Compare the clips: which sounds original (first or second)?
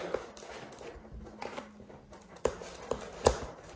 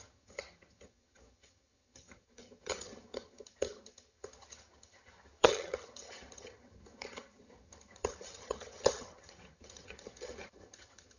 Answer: first